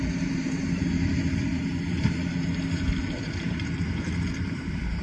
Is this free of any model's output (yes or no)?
no